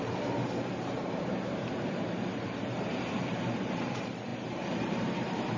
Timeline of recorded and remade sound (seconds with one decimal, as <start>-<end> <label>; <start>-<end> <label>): 0.0-5.6 remade